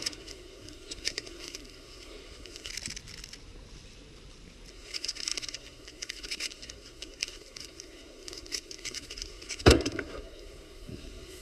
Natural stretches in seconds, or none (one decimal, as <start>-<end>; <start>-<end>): 2.7-4.7